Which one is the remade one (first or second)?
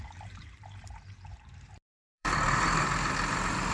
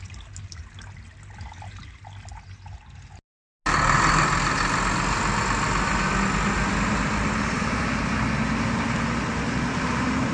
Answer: first